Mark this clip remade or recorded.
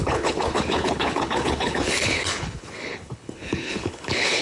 remade